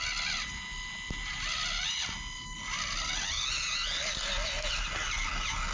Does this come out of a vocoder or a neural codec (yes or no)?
no